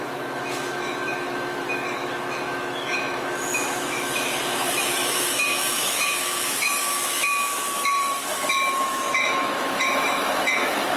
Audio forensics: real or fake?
fake